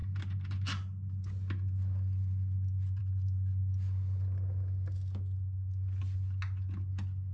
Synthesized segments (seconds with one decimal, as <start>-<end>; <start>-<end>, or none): none

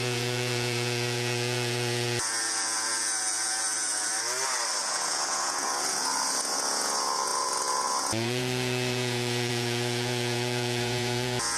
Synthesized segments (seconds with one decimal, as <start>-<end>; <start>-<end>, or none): 0.0-4.1; 4.8-11.6

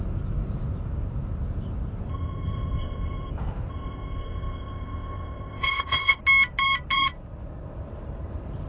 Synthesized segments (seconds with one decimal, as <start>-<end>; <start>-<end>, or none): 2.1-3.3; 3.7-6.2

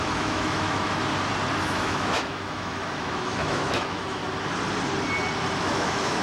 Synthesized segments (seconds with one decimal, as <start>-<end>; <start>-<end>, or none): 0.0-1.0; 1.6-4.2; 5.6-6.2

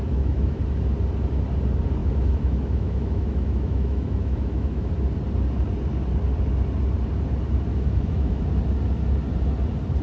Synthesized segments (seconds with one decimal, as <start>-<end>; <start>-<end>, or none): 0.0-0.6; 2.0-4.9; 7.7-8.4

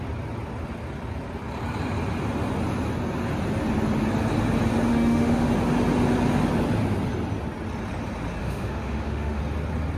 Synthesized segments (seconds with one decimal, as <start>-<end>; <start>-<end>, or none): 4.9-5.5; 8.4-9.4